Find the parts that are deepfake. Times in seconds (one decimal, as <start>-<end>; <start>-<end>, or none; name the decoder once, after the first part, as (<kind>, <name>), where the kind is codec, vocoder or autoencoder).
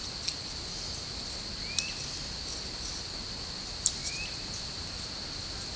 4.0-4.9 (vocoder, BigVGAN v2)